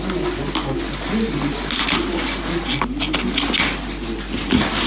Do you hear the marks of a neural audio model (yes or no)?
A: no